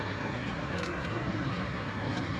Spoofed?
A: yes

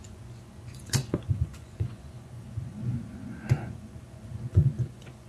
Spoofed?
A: yes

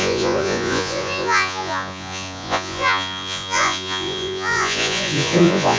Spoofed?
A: yes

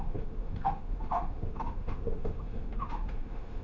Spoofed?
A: yes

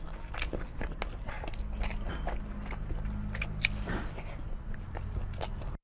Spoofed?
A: no